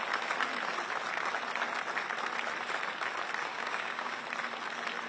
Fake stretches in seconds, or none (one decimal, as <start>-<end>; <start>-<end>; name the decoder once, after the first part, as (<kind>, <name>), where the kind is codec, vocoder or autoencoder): 3.5-4.2 (codec, DAC)